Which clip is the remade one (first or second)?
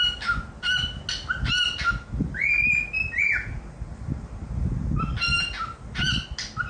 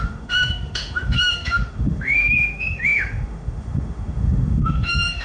second